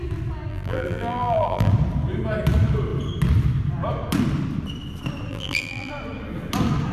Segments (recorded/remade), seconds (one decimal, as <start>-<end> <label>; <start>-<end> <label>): 0.0-0.5 recorded; 0.5-1.7 remade; 1.7-5.3 recorded; 5.3-5.9 remade; 5.9-6.9 recorded